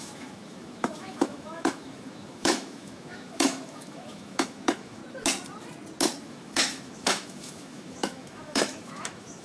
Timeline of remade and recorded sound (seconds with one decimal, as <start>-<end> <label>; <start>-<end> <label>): 0.0-5.0 remade; 5.0-6.2 recorded; 6.2-9.4 remade